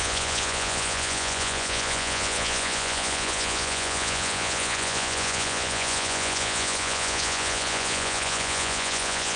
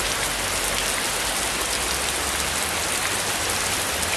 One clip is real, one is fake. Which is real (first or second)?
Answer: second